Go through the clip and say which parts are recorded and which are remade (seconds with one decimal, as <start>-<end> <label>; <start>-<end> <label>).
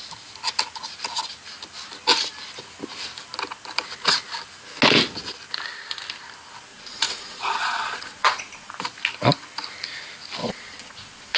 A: 0.0-6.7 recorded; 6.7-8.7 remade; 8.7-10.4 recorded; 10.4-11.4 remade